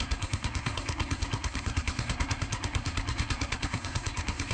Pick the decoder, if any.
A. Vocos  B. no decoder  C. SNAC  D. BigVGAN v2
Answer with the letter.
C